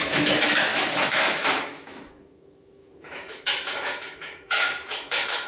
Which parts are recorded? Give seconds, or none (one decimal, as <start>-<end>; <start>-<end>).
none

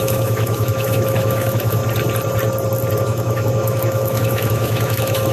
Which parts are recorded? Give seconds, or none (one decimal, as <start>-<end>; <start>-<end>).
1.8-3.0

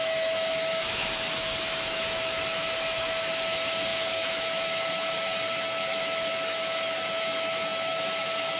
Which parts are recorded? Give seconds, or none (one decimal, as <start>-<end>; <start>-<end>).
none

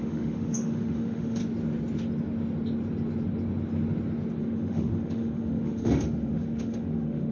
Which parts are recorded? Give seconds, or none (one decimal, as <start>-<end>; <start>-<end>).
1.4-4.4

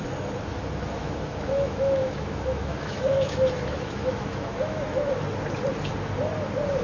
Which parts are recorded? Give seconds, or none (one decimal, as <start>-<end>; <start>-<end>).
0.0-1.0; 5.1-6.8

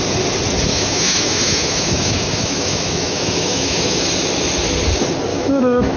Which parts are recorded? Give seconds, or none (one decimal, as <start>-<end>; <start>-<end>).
0.0-0.7; 4.0-5.3

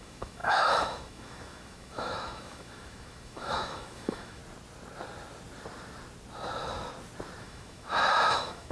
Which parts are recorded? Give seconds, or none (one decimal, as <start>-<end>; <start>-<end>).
4.4-7.4